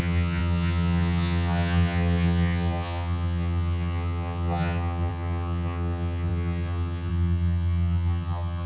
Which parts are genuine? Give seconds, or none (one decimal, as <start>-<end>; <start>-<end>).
none